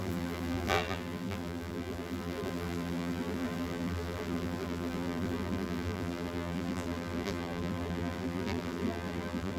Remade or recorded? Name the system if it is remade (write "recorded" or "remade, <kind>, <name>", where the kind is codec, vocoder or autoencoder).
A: remade, vocoder, BigVGAN v2